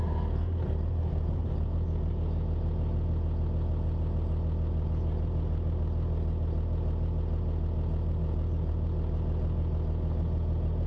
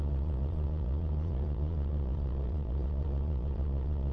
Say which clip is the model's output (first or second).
second